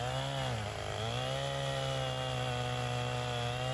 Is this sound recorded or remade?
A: recorded